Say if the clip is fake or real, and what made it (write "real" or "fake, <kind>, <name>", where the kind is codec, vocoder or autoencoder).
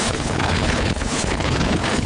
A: fake, codec, HILCodec